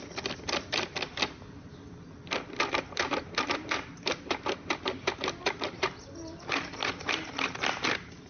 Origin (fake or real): fake